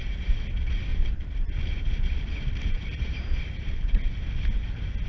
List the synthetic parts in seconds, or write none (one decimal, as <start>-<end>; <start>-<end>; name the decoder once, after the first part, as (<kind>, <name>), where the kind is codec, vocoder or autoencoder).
0.9-4.0 (vocoder, BigVGAN v2)